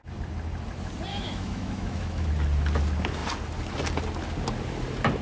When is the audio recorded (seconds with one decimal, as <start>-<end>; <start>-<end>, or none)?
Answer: 0.0-1.1; 2.3-5.2